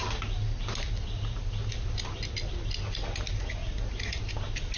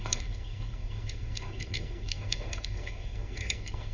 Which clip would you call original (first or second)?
first